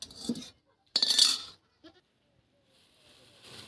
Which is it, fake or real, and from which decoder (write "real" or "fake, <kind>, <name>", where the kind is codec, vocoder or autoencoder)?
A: real